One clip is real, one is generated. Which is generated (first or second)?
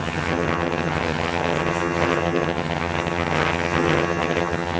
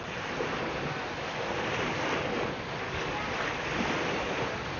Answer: first